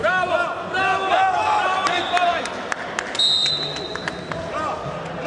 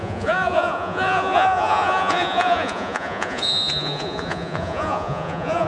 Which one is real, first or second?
first